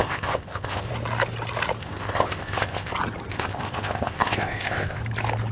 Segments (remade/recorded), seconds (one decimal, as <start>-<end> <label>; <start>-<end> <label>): 0.0-0.9 remade; 0.9-1.8 recorded; 1.8-2.9 remade; 2.9-3.3 recorded; 3.3-5.0 remade; 5.0-5.5 recorded

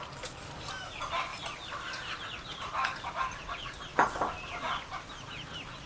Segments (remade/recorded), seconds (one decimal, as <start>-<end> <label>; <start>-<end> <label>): 0.0-5.9 recorded

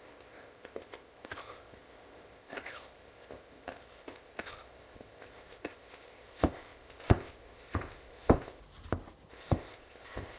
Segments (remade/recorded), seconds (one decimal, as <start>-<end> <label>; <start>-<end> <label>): 0.0-8.6 remade; 8.6-9.3 recorded; 9.3-10.4 remade

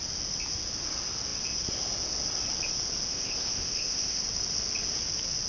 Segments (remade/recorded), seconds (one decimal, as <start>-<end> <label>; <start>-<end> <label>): 0.0-3.1 recorded; 3.1-4.2 remade; 4.2-5.5 recorded

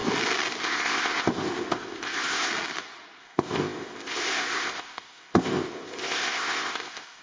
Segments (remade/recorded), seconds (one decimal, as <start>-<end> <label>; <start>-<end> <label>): 0.0-0.6 recorded; 0.6-2.5 remade; 2.5-3.2 recorded; 3.2-7.2 remade

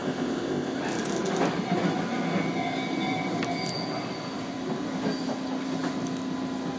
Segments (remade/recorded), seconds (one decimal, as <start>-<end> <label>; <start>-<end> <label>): 0.0-0.8 remade; 0.8-6.8 recorded